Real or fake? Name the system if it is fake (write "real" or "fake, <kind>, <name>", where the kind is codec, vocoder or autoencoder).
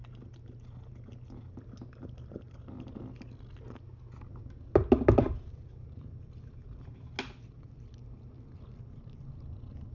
real